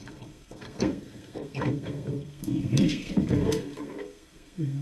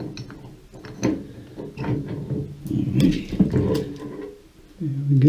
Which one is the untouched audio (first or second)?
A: second